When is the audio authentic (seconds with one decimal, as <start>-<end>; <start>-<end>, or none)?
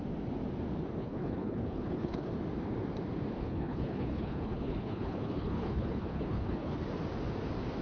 0.0-1.0; 2.3-3.4; 6.8-7.8